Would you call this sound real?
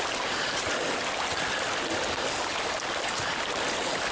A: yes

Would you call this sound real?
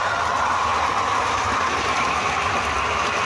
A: yes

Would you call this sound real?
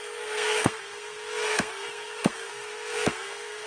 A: no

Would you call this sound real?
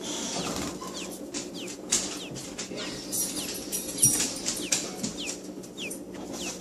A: yes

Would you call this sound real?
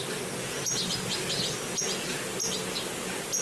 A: yes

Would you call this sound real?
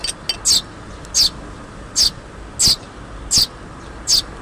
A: yes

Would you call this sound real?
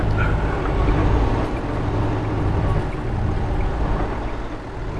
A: yes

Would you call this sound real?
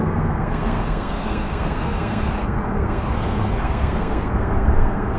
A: no